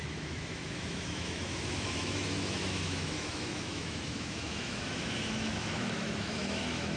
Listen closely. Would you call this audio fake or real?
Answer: fake